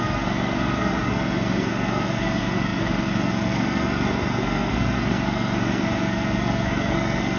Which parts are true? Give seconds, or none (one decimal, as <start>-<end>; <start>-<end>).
none